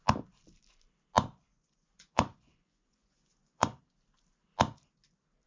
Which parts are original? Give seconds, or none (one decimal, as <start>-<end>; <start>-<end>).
0.0-1.5; 3.8-5.5